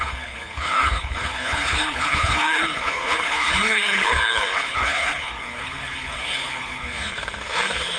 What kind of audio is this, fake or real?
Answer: fake